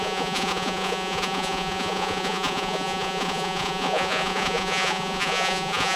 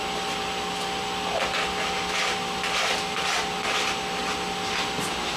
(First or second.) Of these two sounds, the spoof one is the first